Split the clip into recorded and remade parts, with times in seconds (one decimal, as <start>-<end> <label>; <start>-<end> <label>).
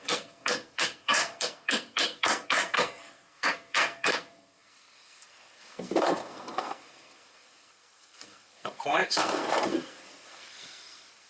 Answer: 0.0-11.3 remade